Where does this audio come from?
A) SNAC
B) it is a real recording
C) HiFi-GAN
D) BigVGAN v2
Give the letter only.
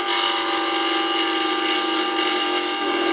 B